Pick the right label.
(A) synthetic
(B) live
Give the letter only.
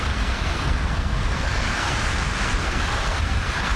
A